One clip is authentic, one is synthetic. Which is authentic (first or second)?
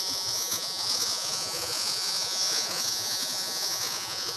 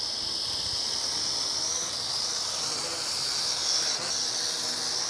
second